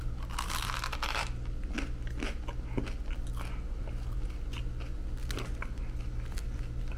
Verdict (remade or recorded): recorded